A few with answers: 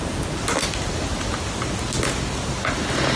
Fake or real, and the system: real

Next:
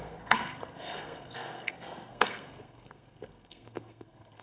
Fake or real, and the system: fake, codec, SNAC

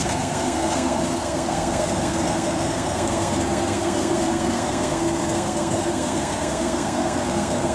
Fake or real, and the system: fake, codec, SNAC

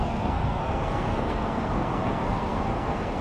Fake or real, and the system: fake, codec, SNAC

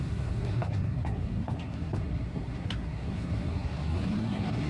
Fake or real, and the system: fake, codec, SNAC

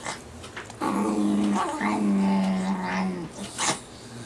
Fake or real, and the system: real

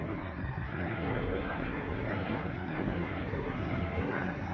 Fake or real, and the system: fake, codec, SNAC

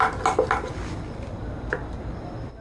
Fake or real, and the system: real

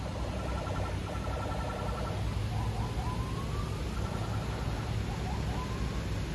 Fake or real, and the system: real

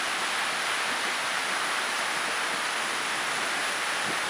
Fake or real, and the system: real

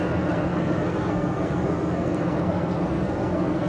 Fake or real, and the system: fake, codec, SNAC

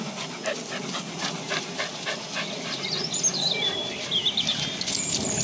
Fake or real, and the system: real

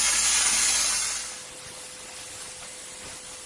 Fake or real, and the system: real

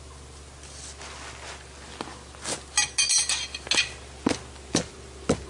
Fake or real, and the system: real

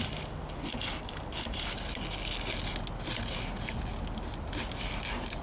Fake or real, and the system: real